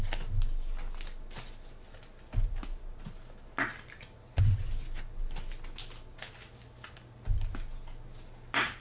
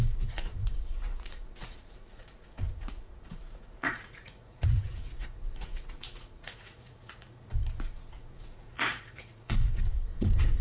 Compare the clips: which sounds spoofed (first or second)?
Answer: second